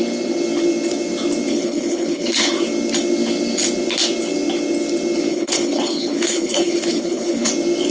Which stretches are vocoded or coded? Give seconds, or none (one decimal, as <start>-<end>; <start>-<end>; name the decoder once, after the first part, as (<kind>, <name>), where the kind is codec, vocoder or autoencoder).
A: 1.5-2.5 (codec, HILCodec); 5.3-7.5